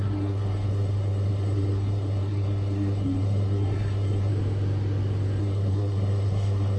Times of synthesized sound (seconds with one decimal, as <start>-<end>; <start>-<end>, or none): 0.0-4.3; 5.4-6.8

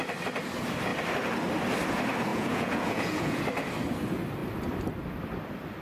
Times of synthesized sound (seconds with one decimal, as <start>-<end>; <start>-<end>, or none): 2.3-3.4

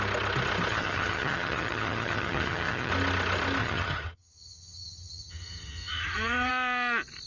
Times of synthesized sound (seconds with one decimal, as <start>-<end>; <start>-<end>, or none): 0.7-2.9; 3.6-6.5

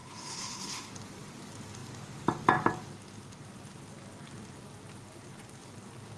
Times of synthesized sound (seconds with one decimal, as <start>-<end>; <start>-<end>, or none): 0.0-0.9

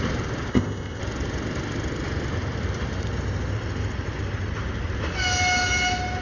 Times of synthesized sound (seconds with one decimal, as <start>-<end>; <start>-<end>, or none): 0.5-1.0

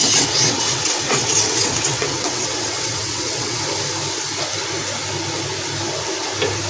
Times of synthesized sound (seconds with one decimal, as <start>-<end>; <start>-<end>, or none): 0.0-3.6

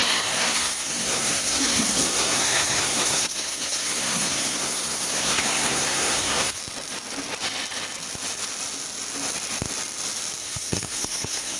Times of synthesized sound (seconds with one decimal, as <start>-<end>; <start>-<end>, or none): 0.0-6.6; 10.4-11.6